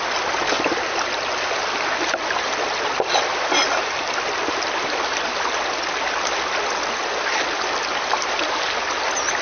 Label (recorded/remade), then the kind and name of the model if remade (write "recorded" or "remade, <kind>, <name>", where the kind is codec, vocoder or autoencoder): recorded